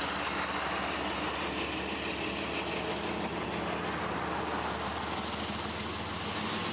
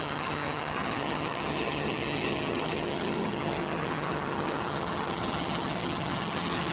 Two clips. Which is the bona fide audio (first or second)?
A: first